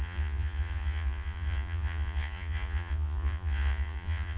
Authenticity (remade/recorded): remade